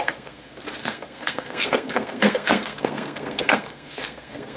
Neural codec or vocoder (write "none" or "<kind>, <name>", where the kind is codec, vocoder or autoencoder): codec, SNAC